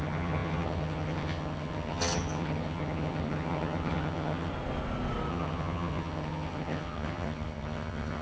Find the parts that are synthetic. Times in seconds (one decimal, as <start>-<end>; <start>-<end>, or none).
0.0-4.5; 5.3-8.2